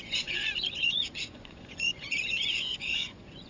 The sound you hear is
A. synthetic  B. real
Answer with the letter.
A